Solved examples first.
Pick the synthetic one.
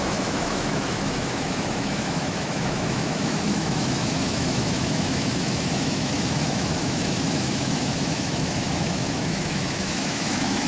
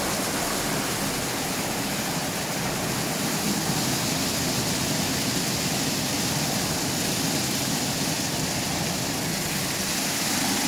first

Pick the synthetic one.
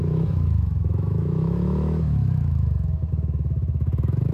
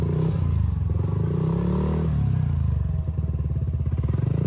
first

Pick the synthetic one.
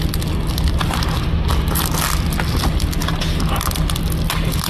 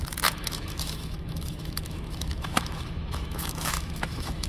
second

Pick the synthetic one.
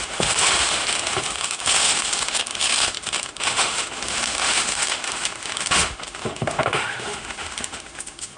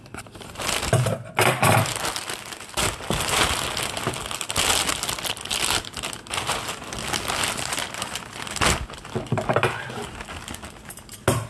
first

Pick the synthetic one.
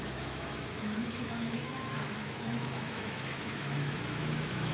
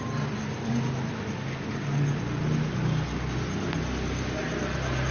first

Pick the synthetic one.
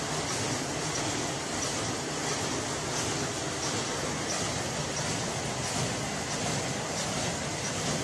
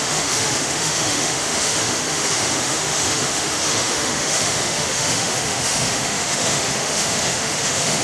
second